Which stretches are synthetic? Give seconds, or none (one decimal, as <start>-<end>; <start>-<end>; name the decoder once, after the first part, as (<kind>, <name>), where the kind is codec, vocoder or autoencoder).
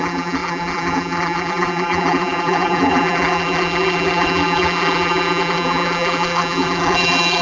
0.0-7.4 (vocoder, BigVGAN v2)